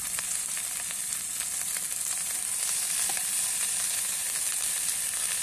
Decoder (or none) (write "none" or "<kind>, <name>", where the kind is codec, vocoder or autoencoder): vocoder, BigVGAN v2